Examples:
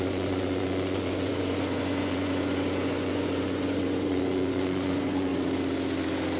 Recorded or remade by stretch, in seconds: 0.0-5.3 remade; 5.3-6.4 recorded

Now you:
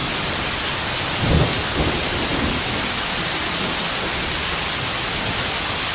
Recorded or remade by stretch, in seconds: 0.0-5.9 recorded